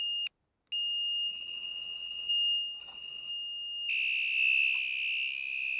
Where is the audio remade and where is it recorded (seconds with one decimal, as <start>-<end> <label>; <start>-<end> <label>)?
0.0-1.3 recorded; 1.3-2.3 remade; 2.3-2.8 recorded; 2.8-3.3 remade; 3.3-5.8 recorded